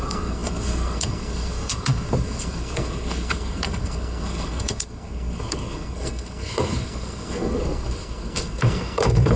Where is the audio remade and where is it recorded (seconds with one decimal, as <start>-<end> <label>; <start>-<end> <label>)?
0.0-9.4 remade